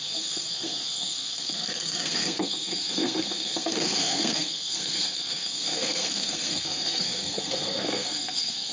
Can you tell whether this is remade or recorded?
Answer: remade